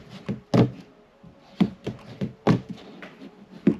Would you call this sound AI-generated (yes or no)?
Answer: no